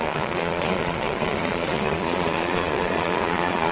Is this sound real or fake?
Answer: fake